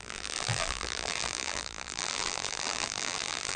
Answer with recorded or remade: remade